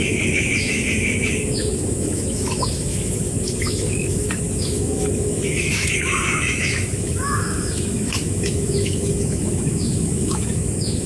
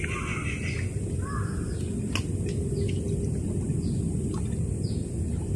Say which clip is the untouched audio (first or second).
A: second